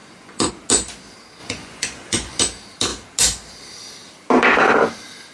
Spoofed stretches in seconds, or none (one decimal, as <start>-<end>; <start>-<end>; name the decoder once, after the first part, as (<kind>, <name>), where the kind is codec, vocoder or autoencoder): 0.0-0.5 (vocoder, Vocos); 1.4-2.4